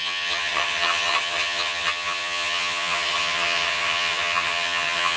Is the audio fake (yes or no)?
yes